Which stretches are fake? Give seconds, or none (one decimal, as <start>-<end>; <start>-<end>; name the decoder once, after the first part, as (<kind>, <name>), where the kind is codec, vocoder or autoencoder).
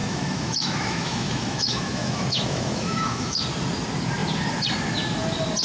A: 0.0-3.4 (autoencoder, DAC-VAE)